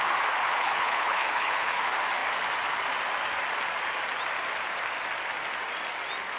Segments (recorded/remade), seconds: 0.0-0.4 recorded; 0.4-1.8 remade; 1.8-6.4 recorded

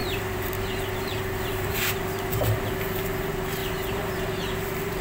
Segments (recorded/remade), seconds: 0.0-1.8 remade; 1.8-3.6 recorded; 3.6-4.3 remade; 4.3-5.0 recorded

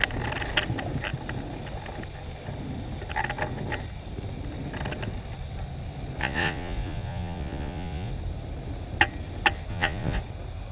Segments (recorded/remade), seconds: 0.0-6.2 recorded; 6.2-8.1 remade; 8.1-9.7 recorded; 9.7-10.2 remade; 10.2-10.7 recorded

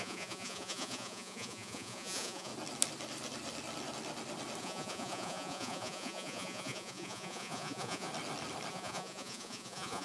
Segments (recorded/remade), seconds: 0.0-2.5 remade; 2.5-4.6 recorded; 4.6-8.1 remade; 8.1-8.7 recorded; 8.7-10.0 remade

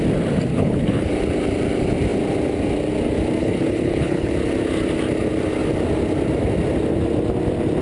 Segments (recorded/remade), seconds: 0.0-0.5 recorded; 0.5-1.1 remade; 1.1-3.4 recorded; 3.4-4.3 remade; 4.3-7.8 recorded

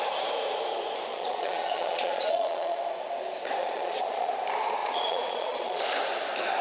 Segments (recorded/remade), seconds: 0.0-1.1 recorded; 1.1-2.8 remade; 2.8-3.6 recorded; 3.6-4.3 remade; 4.3-4.8 recorded; 4.8-5.8 remade; 5.8-6.6 recorded